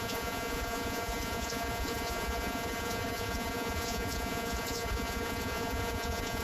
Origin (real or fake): fake